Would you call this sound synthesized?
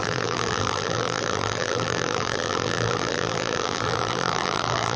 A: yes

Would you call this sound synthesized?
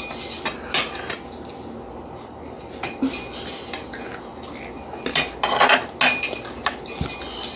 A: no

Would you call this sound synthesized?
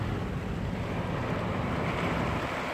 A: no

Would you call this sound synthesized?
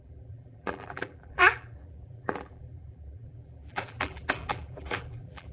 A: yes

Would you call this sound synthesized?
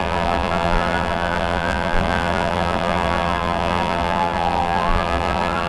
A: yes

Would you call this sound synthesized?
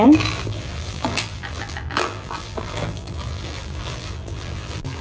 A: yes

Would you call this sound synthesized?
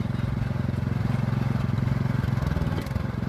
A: no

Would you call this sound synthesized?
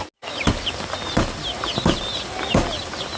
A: no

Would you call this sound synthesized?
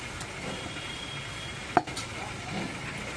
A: no